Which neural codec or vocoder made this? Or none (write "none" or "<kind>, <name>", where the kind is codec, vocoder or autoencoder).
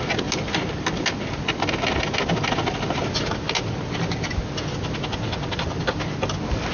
none